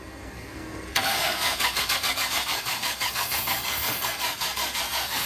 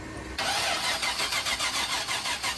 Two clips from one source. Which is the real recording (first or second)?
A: second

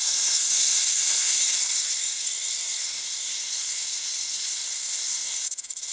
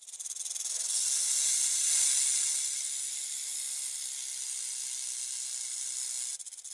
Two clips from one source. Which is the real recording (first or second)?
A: second